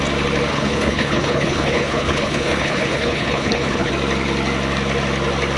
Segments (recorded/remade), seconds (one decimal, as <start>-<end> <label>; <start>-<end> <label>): 0.0-0.5 recorded; 0.5-3.9 remade; 3.9-5.6 recorded